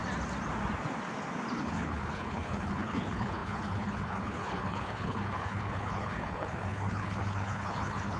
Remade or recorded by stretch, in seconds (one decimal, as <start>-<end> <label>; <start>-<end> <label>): 0.0-1.5 recorded; 1.5-8.2 remade